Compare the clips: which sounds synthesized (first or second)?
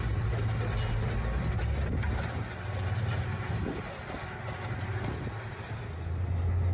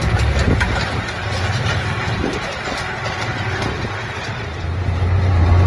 second